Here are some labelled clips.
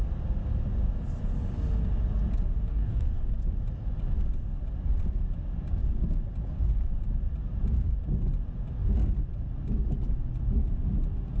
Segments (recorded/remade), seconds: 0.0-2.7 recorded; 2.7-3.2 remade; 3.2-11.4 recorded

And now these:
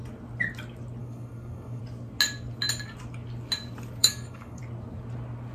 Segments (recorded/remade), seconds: 0.0-1.0 recorded; 1.0-1.8 remade; 1.8-4.0 recorded; 4.0-4.6 remade; 4.6-5.5 recorded

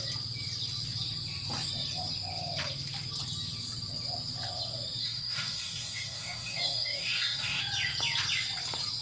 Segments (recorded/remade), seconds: 0.0-5.0 recorded; 5.0-7.6 remade; 7.6-9.0 recorded

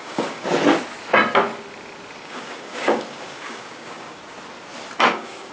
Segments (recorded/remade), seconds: 0.0-0.5 remade; 0.5-2.2 recorded; 2.2-4.2 remade; 4.2-5.1 recorded; 5.1-5.5 remade